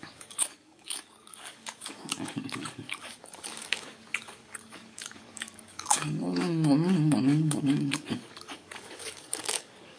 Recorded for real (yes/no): no